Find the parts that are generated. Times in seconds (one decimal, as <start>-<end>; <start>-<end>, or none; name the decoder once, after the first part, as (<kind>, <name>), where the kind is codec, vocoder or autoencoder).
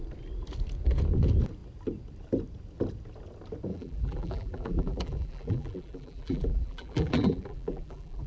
3.7-8.3 (vocoder, BigVGAN v2)